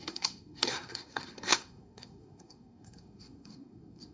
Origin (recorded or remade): remade